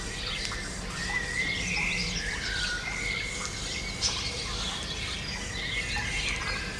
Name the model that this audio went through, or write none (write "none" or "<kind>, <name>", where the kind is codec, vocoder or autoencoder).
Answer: none